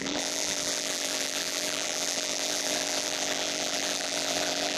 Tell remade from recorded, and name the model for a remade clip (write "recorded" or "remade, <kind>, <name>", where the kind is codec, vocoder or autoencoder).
remade, vocoder, BigVGAN v2